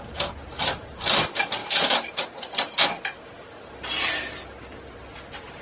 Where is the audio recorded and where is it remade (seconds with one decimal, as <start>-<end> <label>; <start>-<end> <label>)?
0.0-5.6 recorded